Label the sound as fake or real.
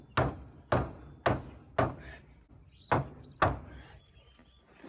real